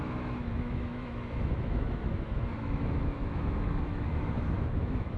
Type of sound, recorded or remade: remade